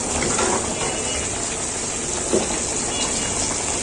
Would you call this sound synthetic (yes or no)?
no